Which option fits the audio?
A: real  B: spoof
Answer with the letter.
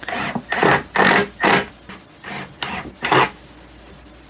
A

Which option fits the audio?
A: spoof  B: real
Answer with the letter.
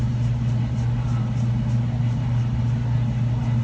B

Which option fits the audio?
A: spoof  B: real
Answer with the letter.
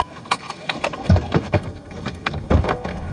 A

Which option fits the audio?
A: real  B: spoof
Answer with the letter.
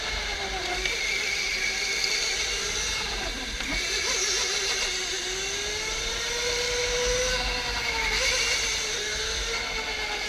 A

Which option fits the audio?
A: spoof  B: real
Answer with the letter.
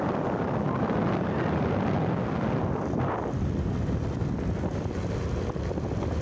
B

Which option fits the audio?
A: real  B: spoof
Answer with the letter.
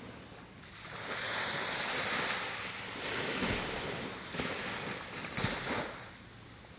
A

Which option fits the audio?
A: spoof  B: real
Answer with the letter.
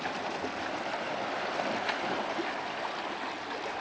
B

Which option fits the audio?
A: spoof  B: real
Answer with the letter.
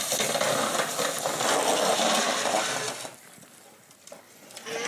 B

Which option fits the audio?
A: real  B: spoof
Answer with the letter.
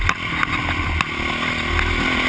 A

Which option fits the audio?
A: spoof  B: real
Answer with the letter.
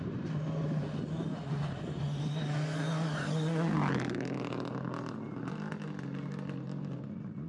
B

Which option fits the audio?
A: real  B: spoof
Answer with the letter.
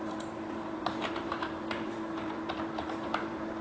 B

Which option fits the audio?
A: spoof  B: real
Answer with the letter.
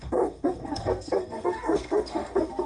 A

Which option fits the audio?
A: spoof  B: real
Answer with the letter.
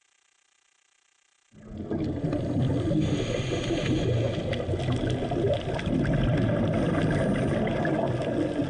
B